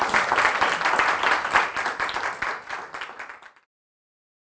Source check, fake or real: real